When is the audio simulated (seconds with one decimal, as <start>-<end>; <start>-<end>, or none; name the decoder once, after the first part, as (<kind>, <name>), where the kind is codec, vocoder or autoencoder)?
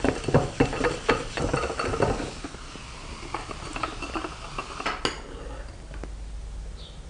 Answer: none